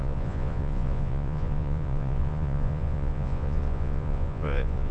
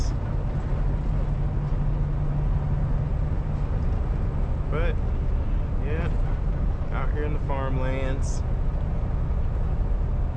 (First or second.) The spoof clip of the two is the first